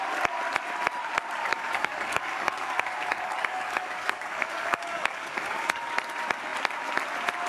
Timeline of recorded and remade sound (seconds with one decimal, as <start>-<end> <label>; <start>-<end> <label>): 0.0-1.4 recorded; 1.4-5.9 remade; 5.9-7.5 recorded